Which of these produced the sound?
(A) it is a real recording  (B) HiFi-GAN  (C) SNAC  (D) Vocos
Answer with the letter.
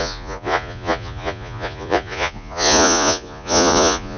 D